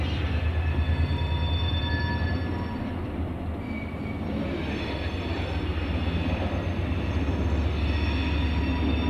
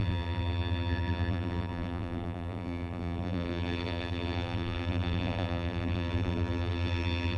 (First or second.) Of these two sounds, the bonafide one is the first